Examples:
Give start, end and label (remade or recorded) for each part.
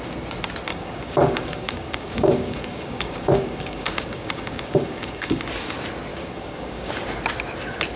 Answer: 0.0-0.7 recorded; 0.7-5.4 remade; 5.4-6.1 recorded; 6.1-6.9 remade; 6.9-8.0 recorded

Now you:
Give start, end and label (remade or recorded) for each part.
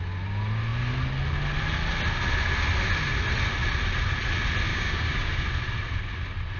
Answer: 0.0-4.7 recorded; 4.7-5.4 remade; 5.4-6.6 recorded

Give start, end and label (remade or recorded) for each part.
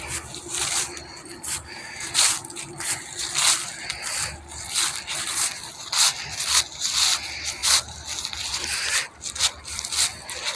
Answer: 0.0-1.6 recorded; 1.6-2.1 remade; 2.1-10.6 recorded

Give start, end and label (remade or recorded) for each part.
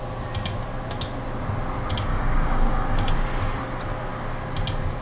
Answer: 0.0-2.1 recorded; 2.1-3.1 remade; 3.1-5.0 recorded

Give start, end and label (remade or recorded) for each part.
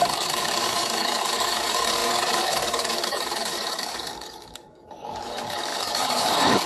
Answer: 0.0-6.7 remade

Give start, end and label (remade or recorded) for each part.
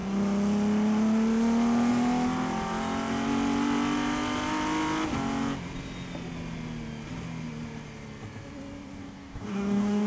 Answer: 0.0-9.0 recorded; 9.0-10.1 remade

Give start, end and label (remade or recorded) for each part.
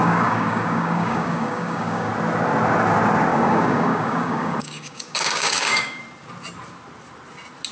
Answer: 0.0-2.1 remade; 2.1-3.3 recorded; 3.3-6.0 remade; 6.0-7.7 recorded